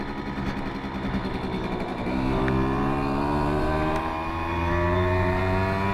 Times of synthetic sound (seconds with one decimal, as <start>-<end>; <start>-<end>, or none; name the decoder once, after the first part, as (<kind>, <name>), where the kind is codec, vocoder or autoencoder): 1.9-5.4 (vocoder, BigVGAN v2)